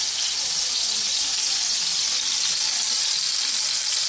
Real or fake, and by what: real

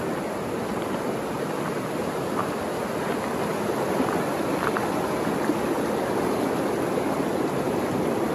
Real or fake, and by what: real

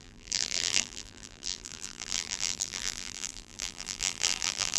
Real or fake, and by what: fake, vocoder, BigVGAN v2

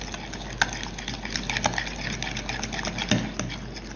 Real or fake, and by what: real